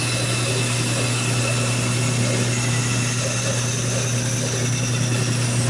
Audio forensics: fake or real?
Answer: real